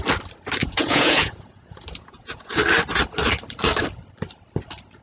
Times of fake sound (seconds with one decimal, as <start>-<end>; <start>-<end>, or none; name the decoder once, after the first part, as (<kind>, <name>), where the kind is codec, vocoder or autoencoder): 0.6-2.6 (vocoder, Vocos)